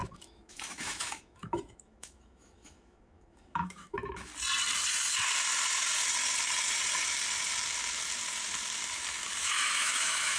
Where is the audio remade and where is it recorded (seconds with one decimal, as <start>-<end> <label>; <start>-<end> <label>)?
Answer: 0.0-4.3 remade; 4.3-9.4 recorded; 9.4-10.4 remade

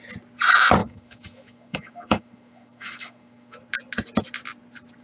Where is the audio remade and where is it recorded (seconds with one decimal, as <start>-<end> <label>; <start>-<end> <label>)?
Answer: 0.0-0.8 recorded; 0.8-3.6 remade; 3.6-5.0 recorded